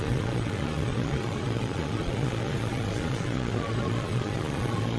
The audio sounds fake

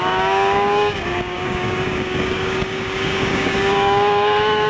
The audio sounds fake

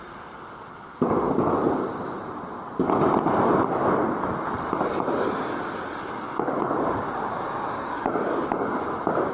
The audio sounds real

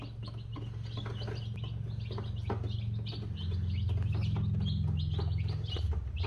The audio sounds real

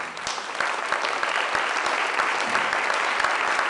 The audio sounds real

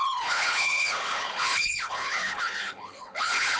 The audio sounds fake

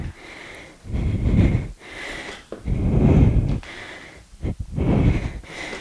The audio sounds real